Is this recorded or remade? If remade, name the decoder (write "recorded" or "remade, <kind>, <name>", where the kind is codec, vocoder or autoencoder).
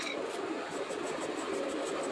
recorded